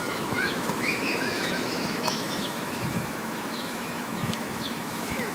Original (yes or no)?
no